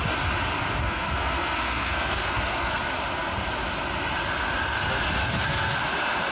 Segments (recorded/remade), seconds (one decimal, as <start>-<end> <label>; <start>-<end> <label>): 0.0-0.8 recorded; 0.8-2.8 remade; 2.8-5.2 recorded; 5.2-5.8 remade; 5.8-6.3 recorded